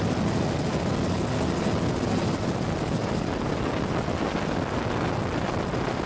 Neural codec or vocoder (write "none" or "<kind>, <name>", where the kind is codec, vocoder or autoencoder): none